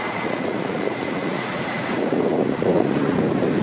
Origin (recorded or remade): remade